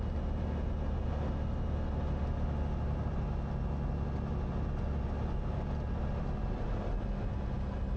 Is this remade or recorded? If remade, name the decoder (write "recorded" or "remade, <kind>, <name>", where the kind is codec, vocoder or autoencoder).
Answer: recorded